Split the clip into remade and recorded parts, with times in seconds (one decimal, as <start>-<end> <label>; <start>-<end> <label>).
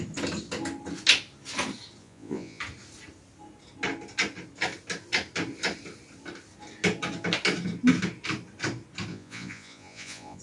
0.0-2.0 recorded; 2.0-2.6 remade; 2.6-9.1 recorded; 9.1-10.4 remade